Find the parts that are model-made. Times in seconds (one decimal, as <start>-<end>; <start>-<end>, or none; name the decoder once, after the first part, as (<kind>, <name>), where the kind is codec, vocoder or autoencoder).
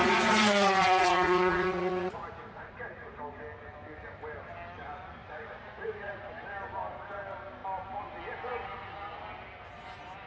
0.0-3.2 (vocoder, Vocos); 5.2-6.3